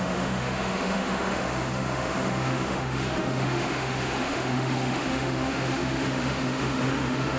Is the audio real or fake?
fake